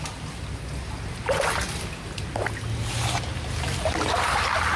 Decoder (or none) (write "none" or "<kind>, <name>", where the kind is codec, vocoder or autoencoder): none